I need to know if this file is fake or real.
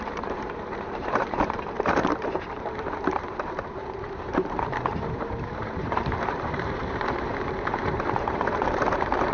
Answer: fake